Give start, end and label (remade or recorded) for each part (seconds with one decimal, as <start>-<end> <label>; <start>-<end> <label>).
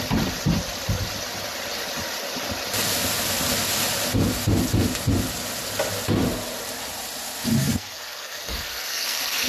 0.0-7.6 recorded; 7.6-9.5 remade